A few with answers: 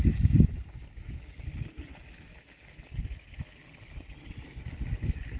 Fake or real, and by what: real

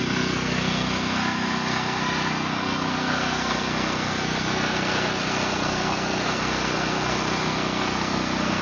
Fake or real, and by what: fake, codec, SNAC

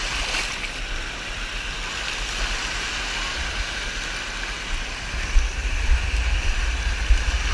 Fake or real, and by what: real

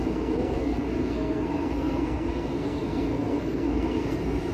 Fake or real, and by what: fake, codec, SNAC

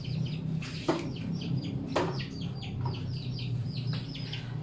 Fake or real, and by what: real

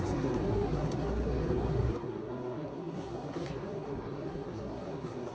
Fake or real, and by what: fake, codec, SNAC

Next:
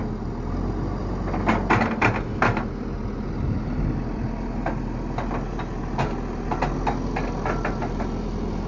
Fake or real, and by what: real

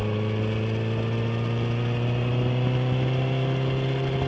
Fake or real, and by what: real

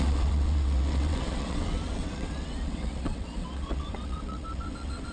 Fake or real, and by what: fake, vocoder, WaveNeXt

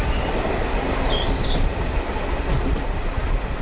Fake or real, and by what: real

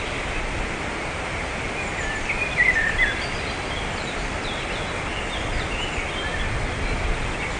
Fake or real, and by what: fake, vocoder, BigVGAN v2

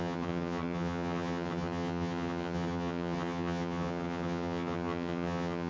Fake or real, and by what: fake, vocoder, HiFi-GAN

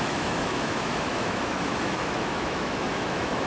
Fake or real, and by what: fake, autoencoder, DAC-VAE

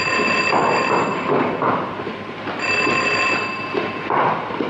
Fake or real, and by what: real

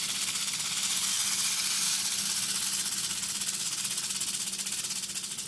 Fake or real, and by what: real